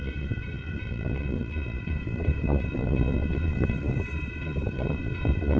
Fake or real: fake